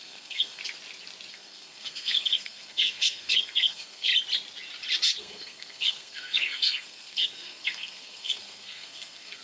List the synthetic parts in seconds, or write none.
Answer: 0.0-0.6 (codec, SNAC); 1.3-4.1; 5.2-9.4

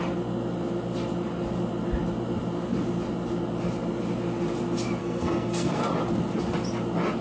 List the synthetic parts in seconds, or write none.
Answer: 5.0-5.9 (codec, SNAC)

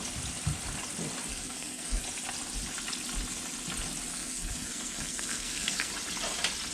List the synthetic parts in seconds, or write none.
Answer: 1.3-2.0 (codec, SNAC); 4.1-5.9

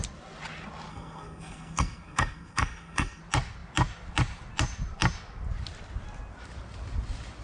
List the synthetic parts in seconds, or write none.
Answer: 0.9-3.2 (codec, SNAC)